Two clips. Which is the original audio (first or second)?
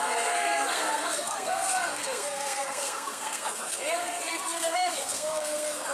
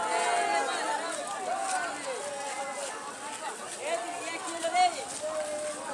second